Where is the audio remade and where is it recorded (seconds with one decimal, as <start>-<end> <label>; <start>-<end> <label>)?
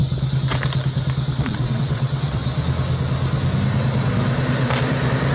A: 0.0-1.4 recorded; 1.4-2.4 remade; 2.4-5.3 recorded